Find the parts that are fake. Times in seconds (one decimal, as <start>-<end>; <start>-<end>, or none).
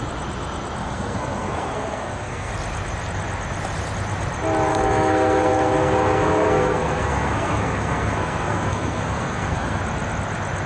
0.8-2.5; 4.7-9.8